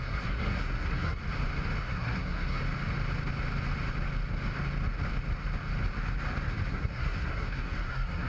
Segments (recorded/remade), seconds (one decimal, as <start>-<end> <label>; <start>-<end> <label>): 0.0-1.2 remade; 1.2-1.8 recorded; 1.8-2.6 remade; 2.6-6.7 recorded; 6.7-8.3 remade